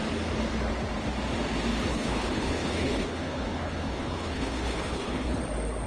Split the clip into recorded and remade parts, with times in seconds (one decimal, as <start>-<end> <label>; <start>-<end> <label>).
0.0-1.9 recorded; 1.9-5.4 remade; 5.4-5.9 recorded